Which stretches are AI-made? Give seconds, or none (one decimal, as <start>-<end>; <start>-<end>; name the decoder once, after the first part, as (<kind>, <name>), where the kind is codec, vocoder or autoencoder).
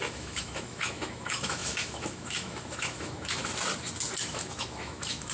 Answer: 0.0-3.4 (autoencoder, DAC-VAE); 4.2-5.3